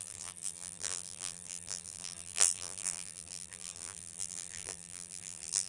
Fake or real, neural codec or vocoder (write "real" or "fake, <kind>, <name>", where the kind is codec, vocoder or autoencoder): fake, vocoder, BigVGAN v2